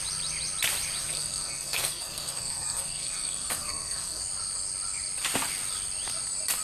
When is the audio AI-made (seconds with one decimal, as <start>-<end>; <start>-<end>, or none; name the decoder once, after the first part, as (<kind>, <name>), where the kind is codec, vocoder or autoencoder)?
1.0-4.2 (codec, SNAC)

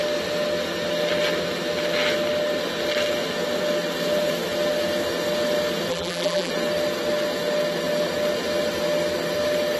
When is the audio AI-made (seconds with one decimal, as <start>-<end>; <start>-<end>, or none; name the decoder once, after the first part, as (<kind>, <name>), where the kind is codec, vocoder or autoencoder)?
5.9-6.5 (vocoder, BigVGAN v2)

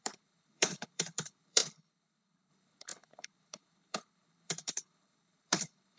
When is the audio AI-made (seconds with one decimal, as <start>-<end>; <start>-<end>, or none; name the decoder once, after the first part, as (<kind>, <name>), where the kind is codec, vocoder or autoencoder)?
0.0-6.0 (codec, HILCodec)

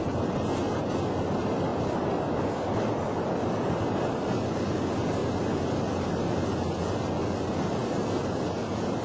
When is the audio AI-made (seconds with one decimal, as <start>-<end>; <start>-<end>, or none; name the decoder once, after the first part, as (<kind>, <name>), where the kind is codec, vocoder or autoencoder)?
none

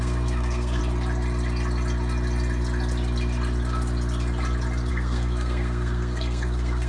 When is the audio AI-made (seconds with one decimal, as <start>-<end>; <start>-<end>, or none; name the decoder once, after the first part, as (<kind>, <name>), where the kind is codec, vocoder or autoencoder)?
0.0-0.8 (codec, SNAC); 4.9-6.9

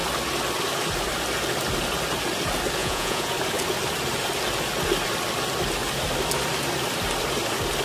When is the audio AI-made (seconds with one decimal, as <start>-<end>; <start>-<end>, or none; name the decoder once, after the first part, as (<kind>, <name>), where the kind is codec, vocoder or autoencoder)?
2.8-3.3 (vocoder, Vocos)

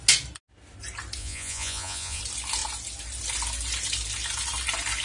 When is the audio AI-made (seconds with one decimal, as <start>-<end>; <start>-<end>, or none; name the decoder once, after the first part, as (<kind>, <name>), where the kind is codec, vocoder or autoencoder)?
1.2-2.2 (vocoder, Vocos)